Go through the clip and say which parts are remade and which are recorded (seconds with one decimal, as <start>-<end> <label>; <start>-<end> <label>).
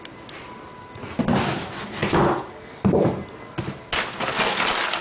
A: 0.0-5.0 recorded